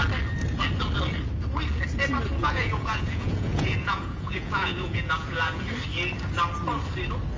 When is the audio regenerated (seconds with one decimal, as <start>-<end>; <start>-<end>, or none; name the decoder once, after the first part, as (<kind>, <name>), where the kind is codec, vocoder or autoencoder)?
2.4-5.6 (vocoder, Vocos)